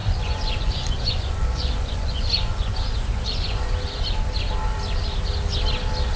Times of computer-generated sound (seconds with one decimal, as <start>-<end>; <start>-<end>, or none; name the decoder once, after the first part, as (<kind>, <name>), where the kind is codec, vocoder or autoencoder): 0.0-3.7 (vocoder, Vocos)